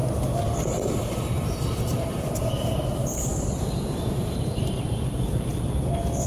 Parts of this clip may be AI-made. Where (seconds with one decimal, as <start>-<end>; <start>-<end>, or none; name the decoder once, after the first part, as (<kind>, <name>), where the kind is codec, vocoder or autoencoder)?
0.0-5.5 (vocoder, BigVGAN v2)